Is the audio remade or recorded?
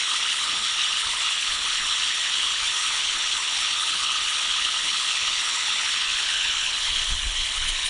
remade